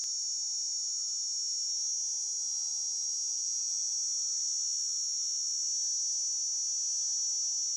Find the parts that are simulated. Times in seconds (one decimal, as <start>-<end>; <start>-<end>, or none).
3.3-3.9